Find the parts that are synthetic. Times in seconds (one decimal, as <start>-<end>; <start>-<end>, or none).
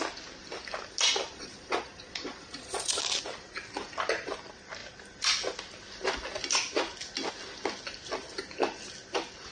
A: 1.3-3.0